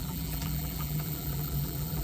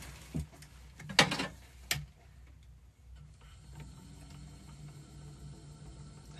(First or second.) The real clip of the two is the second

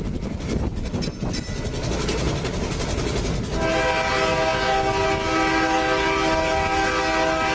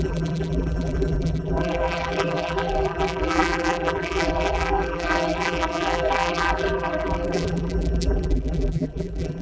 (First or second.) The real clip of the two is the first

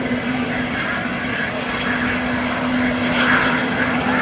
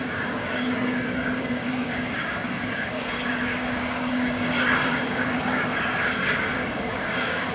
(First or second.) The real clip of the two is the first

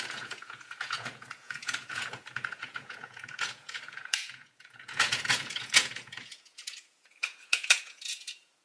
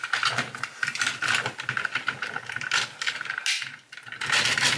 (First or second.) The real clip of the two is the second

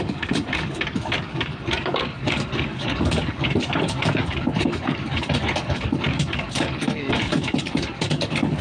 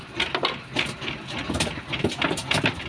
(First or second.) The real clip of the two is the second